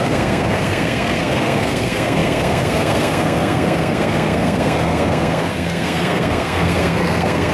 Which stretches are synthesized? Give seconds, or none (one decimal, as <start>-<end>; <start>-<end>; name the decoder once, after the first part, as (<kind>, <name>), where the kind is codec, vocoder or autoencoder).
0.0-7.5 (codec, SNAC)